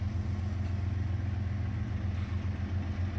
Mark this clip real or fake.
real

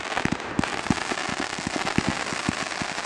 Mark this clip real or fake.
real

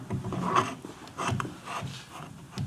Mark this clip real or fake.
real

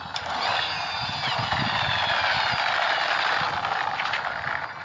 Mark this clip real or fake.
real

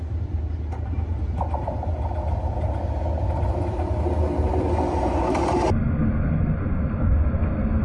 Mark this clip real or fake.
real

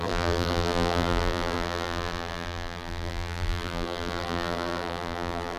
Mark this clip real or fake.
fake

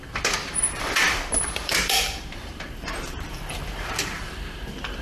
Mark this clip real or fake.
fake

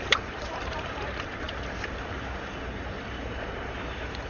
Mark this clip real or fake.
fake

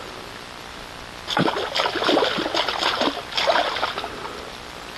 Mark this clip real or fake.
real